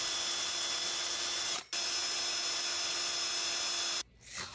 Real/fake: real